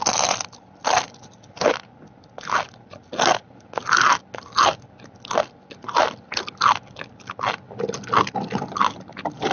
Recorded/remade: recorded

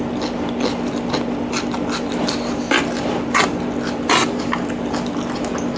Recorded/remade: recorded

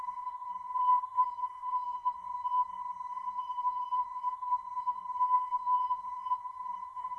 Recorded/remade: remade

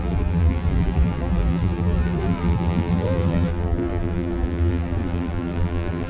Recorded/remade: remade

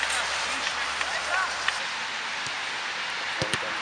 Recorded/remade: remade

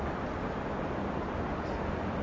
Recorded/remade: recorded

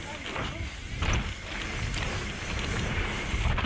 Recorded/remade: recorded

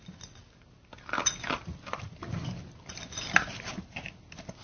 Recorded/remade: recorded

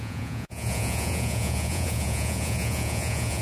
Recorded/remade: remade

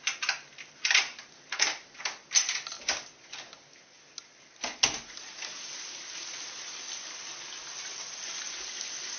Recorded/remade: recorded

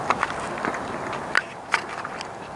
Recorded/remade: recorded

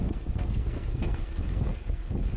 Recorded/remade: remade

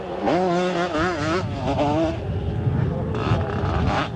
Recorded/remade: recorded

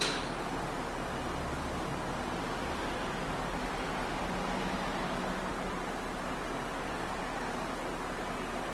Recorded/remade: recorded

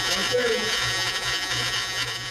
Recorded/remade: remade